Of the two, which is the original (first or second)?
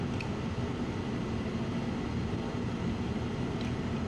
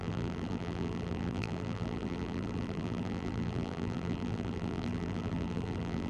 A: first